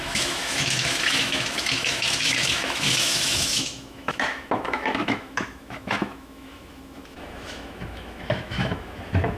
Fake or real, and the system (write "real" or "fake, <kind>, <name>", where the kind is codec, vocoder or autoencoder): fake, autoencoder, DAC-VAE